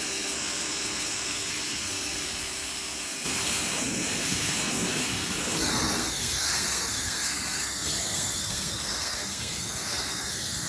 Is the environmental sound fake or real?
fake